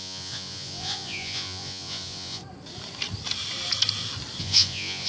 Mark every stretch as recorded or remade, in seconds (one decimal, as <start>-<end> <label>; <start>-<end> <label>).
0.0-2.4 remade; 2.4-4.4 recorded; 4.4-5.1 remade